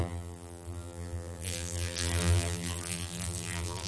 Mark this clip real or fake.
fake